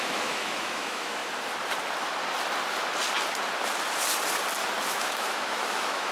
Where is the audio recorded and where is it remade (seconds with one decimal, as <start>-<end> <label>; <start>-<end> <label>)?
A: 0.0-1.2 remade; 1.2-4.9 recorded; 4.9-6.1 remade